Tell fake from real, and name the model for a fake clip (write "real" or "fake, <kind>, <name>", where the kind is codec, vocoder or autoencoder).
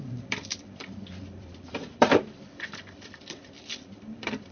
fake, vocoder, BigVGAN v2